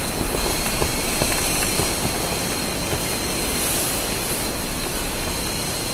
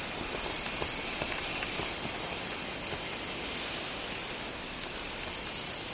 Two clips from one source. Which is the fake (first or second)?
second